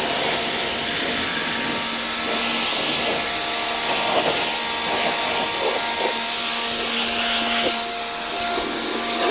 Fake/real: real